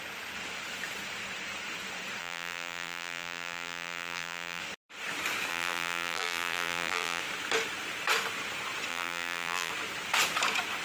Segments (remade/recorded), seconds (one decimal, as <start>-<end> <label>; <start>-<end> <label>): 0.0-2.2 recorded; 2.2-4.6 remade; 4.6-5.5 recorded; 5.5-7.2 remade; 7.2-8.9 recorded; 8.9-9.7 remade; 9.7-10.8 recorded

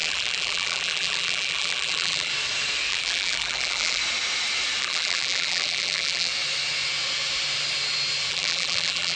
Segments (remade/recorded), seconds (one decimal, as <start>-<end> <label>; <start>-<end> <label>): 0.0-2.3 remade; 2.3-2.9 recorded; 2.9-4.0 remade; 4.0-4.8 recorded; 4.8-6.3 remade; 6.3-8.3 recorded; 8.3-9.2 remade